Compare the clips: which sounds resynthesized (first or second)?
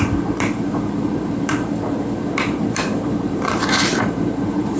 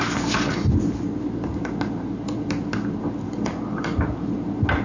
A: first